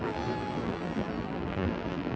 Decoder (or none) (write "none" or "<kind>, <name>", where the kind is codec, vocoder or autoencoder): vocoder, BigVGAN v2